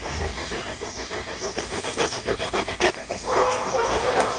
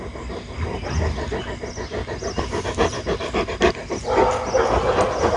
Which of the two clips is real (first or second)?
second